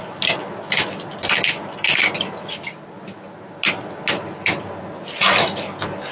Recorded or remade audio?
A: recorded